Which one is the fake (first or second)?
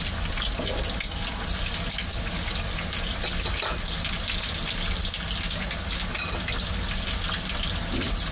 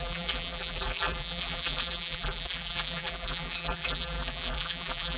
second